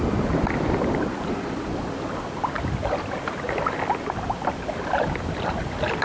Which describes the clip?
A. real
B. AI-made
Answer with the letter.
A